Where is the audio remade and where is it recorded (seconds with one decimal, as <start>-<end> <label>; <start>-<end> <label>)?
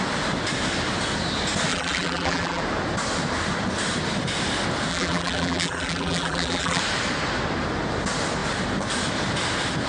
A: 0.0-1.7 recorded; 1.7-2.6 remade; 2.6-4.9 recorded; 4.9-6.8 remade; 6.8-9.9 recorded